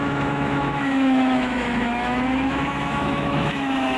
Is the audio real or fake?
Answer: fake